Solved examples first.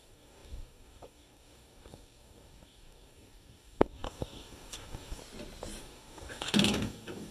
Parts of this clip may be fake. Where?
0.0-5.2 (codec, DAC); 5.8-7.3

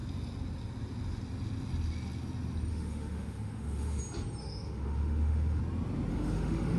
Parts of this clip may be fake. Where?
2.7-4.0 (autoencoder, DAC-VAE); 4.4-5.6; 6.1-6.8

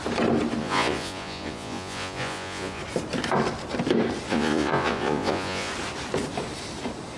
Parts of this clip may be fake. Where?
0.6-2.8 (vocoder, Vocos); 4.3-5.7

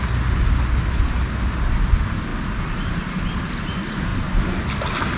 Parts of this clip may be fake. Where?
none